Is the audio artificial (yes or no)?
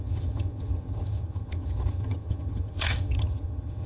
yes